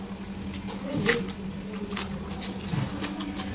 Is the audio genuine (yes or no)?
yes